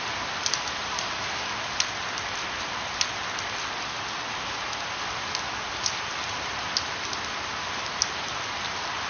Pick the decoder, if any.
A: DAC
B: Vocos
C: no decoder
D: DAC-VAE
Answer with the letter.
C